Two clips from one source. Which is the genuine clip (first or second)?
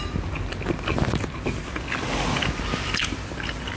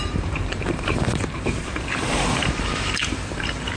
first